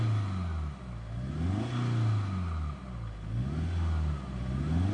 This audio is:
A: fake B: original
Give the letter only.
B